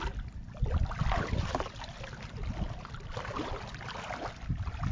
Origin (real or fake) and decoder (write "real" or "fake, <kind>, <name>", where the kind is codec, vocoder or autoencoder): real